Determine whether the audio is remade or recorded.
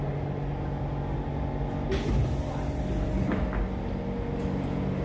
recorded